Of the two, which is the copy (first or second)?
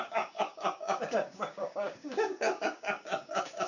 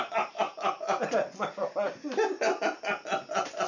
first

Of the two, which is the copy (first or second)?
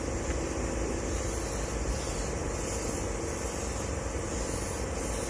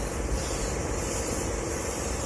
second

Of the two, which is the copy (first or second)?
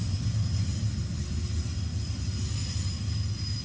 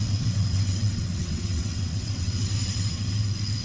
second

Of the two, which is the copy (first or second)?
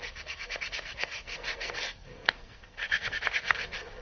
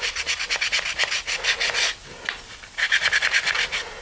first